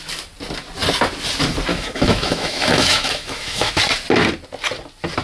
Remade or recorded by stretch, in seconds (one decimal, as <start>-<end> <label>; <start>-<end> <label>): 0.0-1.7 recorded; 1.7-3.8 remade; 3.8-5.2 recorded